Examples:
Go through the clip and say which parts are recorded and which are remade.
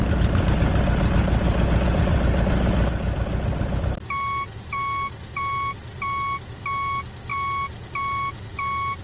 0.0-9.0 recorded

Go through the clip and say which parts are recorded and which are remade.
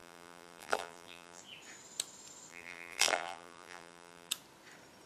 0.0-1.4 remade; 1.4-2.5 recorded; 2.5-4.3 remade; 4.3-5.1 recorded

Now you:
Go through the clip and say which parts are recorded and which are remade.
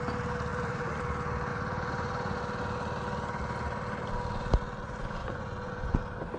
0.0-0.5 recorded; 0.5-1.0 remade; 1.0-1.5 recorded; 1.5-2.4 remade; 2.4-5.2 recorded; 5.2-6.0 remade; 6.0-6.4 recorded